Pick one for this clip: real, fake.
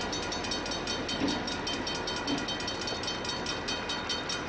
real